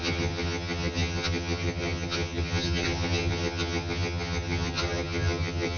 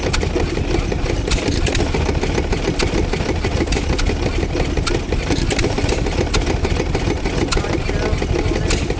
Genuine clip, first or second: second